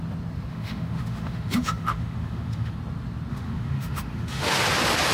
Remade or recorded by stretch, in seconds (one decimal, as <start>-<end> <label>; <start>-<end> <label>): 0.0-0.5 recorded; 0.5-2.7 remade; 2.7-3.3 recorded; 3.3-4.6 remade; 4.6-5.1 recorded